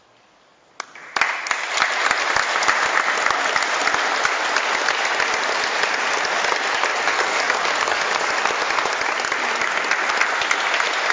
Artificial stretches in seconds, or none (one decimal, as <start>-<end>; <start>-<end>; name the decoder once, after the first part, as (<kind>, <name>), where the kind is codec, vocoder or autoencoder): 6.9-8.3 (codec, DAC)